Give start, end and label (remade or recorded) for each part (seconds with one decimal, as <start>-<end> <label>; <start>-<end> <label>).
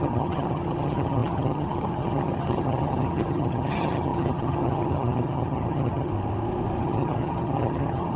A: 0.0-6.1 remade; 6.1-6.8 recorded; 6.8-8.2 remade